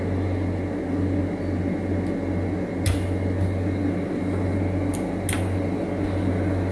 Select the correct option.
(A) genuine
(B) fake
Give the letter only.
A